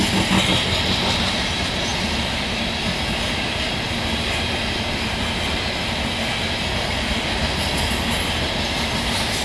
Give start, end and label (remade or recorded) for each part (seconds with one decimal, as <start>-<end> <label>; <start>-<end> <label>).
0.0-9.4 recorded